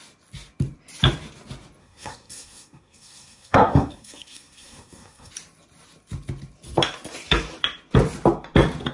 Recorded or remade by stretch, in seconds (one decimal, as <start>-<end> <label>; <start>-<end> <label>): 0.0-1.8 recorded; 1.8-5.3 remade; 5.3-8.9 recorded